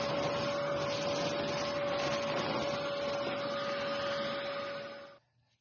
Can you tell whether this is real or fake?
real